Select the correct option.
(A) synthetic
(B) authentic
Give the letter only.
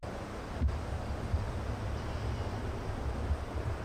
B